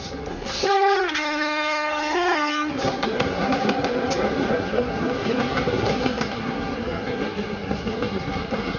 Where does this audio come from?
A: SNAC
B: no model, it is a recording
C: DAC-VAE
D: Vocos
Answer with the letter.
A